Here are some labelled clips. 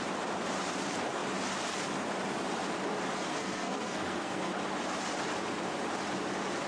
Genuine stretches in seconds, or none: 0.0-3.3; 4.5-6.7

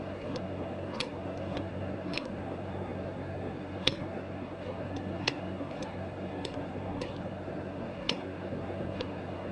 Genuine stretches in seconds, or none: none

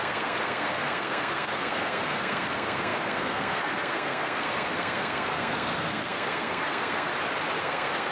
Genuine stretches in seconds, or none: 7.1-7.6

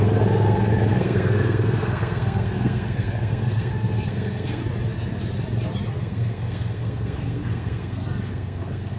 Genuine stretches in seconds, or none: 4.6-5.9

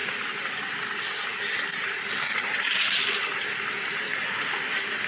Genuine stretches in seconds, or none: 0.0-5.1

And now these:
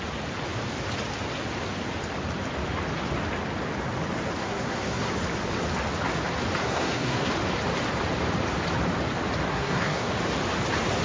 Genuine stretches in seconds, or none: 0.0-4.4; 5.1-6.6; 7.3-9.5; 10.1-11.0

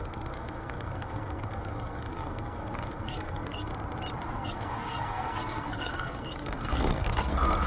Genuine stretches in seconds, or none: 3.7-4.3

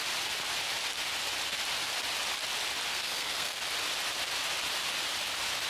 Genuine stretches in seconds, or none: 0.0-2.9; 3.6-5.7